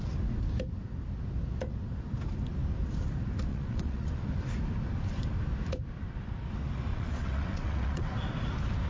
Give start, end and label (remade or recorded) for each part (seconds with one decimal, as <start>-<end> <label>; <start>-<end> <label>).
0.0-3.5 recorded; 3.5-4.1 remade; 4.1-6.9 recorded; 6.9-8.1 remade; 8.1-8.9 recorded